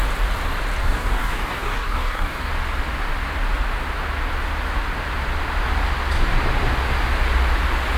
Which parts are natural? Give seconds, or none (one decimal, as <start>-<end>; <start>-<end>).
0.0-0.8; 2.5-8.0